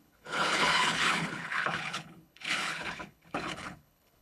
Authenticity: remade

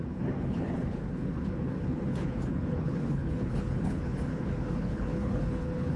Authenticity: remade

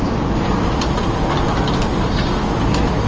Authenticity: recorded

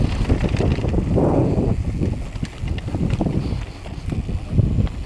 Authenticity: recorded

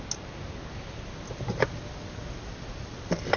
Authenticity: recorded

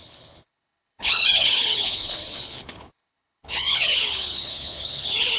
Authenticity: remade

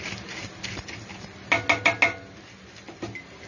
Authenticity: recorded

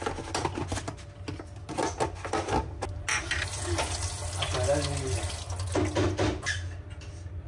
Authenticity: recorded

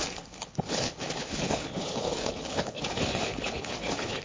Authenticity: remade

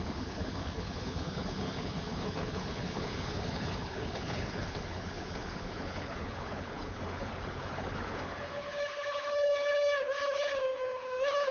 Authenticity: remade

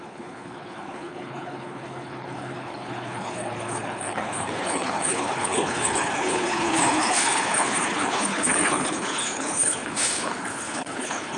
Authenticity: remade